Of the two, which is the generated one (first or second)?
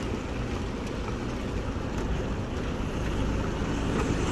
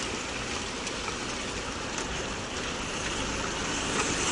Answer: second